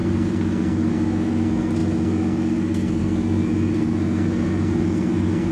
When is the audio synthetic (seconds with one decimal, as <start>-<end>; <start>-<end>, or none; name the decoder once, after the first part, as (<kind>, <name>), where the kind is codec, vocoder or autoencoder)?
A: 0.0-5.5 (codec, SNAC)

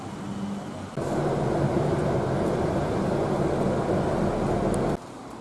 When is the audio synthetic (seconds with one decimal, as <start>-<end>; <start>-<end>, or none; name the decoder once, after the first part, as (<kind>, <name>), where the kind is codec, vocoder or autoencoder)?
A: none

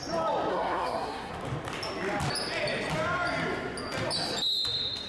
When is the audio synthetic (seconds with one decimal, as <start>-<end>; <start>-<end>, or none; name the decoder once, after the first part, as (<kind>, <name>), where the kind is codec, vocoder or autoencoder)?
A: 0.5-1.3 (codec, SNAC)